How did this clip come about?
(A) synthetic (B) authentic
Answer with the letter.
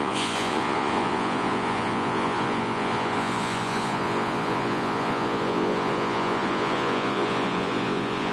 A